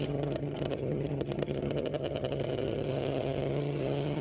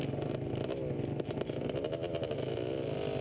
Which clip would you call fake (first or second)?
first